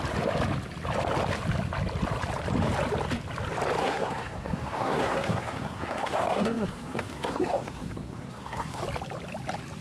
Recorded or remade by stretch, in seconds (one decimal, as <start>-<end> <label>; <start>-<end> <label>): 0.0-3.8 recorded; 3.8-8.8 remade; 8.8-9.8 recorded